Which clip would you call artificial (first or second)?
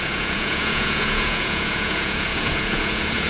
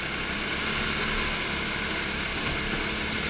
first